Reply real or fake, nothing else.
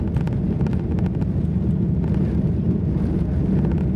real